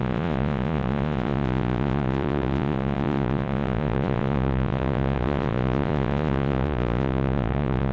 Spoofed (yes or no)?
yes